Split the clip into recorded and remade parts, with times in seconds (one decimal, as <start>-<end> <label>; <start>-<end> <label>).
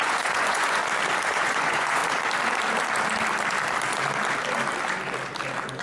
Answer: 0.0-0.8 remade; 0.8-1.3 recorded; 1.3-2.0 remade; 2.0-5.8 recorded